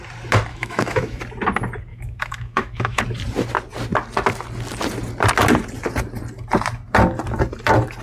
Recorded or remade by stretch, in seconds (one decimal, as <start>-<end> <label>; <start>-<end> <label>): 0.0-0.5 recorded; 0.5-1.2 remade; 1.2-1.9 recorded; 1.9-3.0 remade; 3.0-8.0 recorded

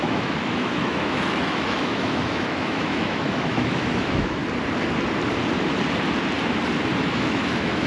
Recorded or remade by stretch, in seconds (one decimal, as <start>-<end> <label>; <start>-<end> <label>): 0.0-4.4 remade; 4.4-7.0 recorded; 7.0-7.9 remade

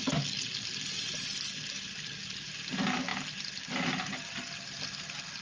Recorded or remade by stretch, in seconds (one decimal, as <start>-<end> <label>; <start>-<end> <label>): 0.0-5.4 recorded

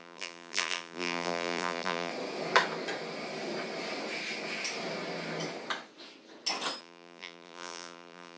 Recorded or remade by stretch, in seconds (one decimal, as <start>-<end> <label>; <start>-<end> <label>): 0.0-2.1 remade; 2.1-6.8 recorded; 6.8-8.4 remade